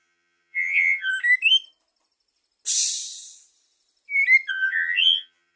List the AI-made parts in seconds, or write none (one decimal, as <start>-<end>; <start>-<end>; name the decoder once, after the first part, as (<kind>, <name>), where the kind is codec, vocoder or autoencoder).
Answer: 0.0-1.1 (vocoder, HiFi-GAN); 4.5-5.6